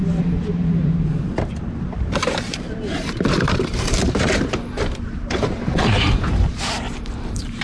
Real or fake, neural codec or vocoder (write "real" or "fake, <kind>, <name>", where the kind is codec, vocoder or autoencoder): fake, vocoder, BigVGAN v2